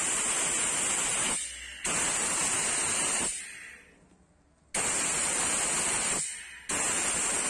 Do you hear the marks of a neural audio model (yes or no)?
no